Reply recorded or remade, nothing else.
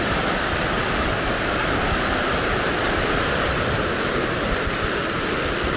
recorded